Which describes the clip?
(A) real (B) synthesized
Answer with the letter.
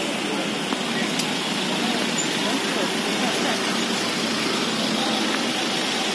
A